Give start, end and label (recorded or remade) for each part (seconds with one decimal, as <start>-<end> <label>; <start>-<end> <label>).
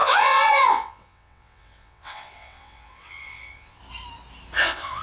0.0-3.8 remade; 3.8-4.6 recorded; 4.6-5.0 remade